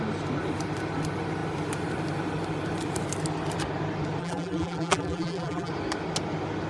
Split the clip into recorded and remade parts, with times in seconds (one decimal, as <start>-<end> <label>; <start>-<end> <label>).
0.0-4.2 recorded; 4.2-5.7 remade; 5.7-6.7 recorded